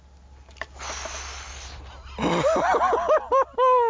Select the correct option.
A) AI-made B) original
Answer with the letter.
B